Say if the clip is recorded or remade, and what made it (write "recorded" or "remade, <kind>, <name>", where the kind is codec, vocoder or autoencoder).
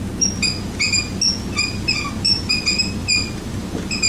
recorded